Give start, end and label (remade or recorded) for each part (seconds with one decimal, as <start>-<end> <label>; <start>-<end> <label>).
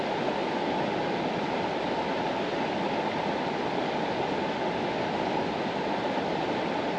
0.0-7.0 recorded